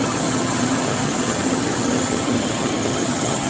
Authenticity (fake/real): fake